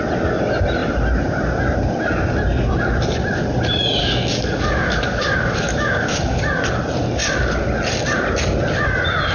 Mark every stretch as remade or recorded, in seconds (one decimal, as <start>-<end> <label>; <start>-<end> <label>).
0.0-4.0 recorded; 4.0-6.4 remade; 6.4-9.3 recorded